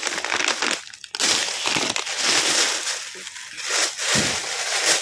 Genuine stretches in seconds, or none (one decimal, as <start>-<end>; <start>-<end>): 0.0-5.0